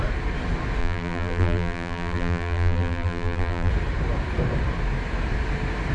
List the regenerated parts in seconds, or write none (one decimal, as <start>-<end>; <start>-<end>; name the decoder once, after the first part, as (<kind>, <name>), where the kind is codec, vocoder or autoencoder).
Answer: 0.8-3.7 (vocoder, BigVGAN v2)